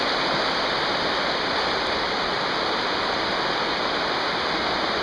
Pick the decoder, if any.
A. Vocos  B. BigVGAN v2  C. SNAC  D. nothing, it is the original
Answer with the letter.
D